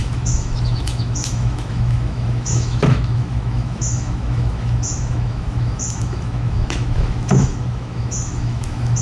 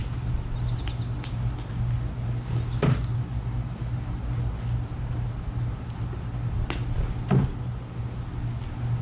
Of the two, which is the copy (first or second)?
first